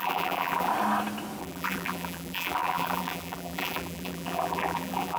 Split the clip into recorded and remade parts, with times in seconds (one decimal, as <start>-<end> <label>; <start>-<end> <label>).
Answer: 0.0-0.7 remade; 0.7-1.4 recorded; 1.4-5.2 remade